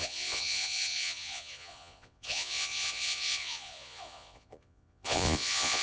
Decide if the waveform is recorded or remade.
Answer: remade